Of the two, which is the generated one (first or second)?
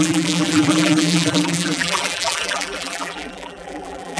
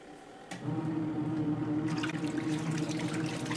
first